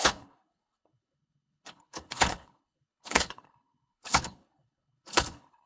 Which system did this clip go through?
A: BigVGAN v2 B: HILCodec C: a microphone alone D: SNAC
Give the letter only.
B